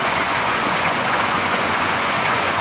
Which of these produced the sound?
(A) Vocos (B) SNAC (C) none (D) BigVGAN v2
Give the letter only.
A